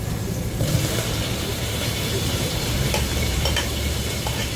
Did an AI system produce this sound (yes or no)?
yes